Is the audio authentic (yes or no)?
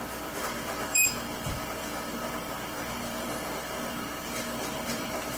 no